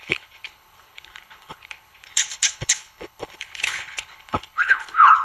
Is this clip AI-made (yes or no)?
yes